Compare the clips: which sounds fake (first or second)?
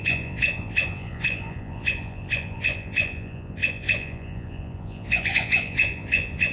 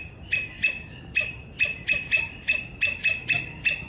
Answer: first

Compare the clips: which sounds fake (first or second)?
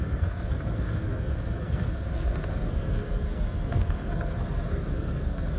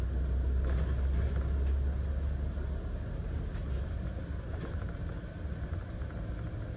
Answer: first